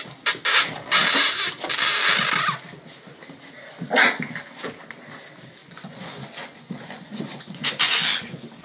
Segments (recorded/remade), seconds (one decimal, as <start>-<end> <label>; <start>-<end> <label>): 0.0-5.6 recorded; 5.6-8.0 remade; 8.0-8.6 recorded